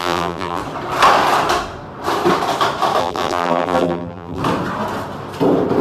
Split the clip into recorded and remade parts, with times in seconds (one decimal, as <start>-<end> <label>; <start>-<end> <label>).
0.0-0.6 remade; 0.6-3.0 recorded; 3.0-4.4 remade; 4.4-5.8 recorded